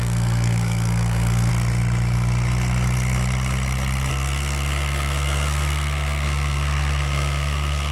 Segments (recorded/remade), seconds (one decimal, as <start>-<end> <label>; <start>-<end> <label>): 0.0-1.5 remade; 1.5-4.1 recorded; 4.1-7.9 remade